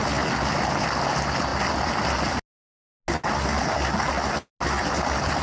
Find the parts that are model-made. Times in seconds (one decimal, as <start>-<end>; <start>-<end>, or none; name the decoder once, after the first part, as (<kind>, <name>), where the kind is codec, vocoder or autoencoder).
none